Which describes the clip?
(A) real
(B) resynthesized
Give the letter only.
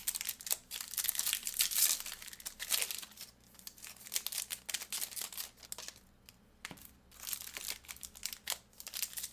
A